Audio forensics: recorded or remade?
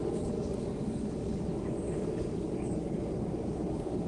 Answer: remade